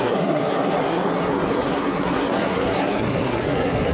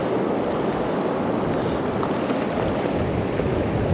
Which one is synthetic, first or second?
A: first